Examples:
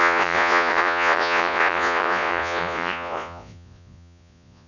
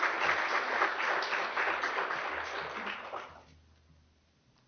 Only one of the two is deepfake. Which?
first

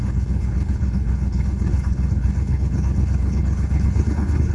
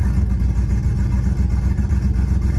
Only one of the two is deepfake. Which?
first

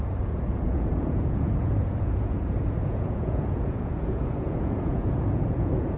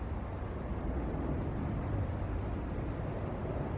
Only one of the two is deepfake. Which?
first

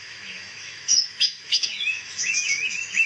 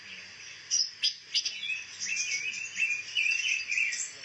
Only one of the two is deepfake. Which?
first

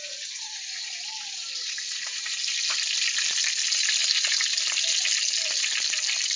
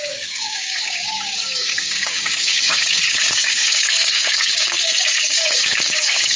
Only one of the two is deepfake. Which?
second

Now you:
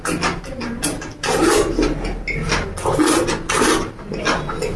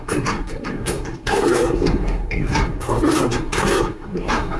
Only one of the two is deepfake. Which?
second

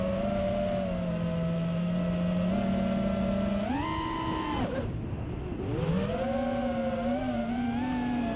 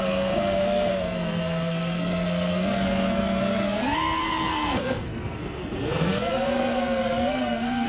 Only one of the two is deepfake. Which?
second